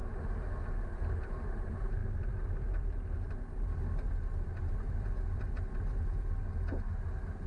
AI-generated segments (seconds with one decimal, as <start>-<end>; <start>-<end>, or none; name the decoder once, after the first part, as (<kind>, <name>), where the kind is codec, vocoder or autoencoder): none